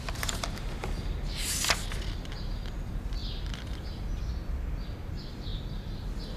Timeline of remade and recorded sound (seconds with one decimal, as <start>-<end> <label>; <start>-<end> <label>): 0.0-6.4 recorded